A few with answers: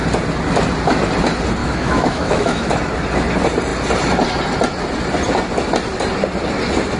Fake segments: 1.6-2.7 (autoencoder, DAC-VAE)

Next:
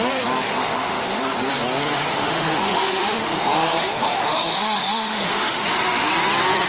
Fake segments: 0.5-1.2 (autoencoder, DAC-VAE); 2.1-6.1